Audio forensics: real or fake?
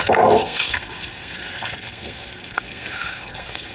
fake